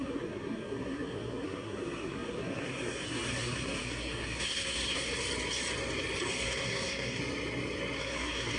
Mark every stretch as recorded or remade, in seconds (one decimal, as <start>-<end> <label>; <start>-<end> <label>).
0.0-5.1 remade; 5.1-6.3 recorded; 6.3-7.2 remade; 7.2-8.0 recorded; 8.0-8.6 remade